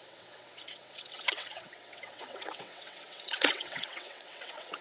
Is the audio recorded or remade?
remade